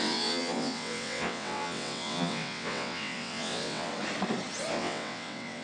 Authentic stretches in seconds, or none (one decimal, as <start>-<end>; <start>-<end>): 3.9-4.7